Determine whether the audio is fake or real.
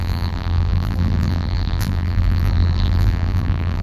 fake